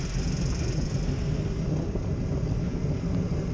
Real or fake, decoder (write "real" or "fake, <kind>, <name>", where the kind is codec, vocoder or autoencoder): real